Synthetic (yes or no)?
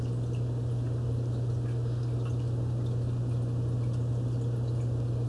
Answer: no